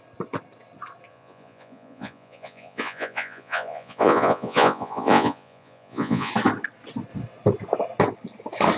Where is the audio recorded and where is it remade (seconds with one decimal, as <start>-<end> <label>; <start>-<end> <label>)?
0.0-1.1 recorded; 1.1-6.3 remade; 6.3-8.8 recorded